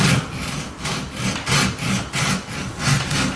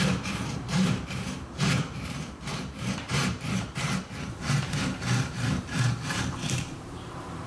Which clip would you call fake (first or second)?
second